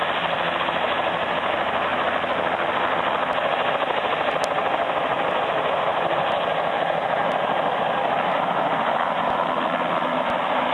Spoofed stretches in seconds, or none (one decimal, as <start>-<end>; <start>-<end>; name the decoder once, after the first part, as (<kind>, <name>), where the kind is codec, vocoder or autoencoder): 5.9-8.7 (vocoder, BigVGAN v2)

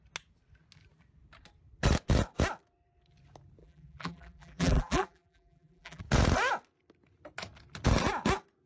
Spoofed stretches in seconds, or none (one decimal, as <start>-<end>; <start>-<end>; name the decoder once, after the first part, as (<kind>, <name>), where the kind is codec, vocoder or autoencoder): 3.6-6.0 (vocoder, BigVGAN v2)